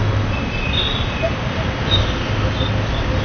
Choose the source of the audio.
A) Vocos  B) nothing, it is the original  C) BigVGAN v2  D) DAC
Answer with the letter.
B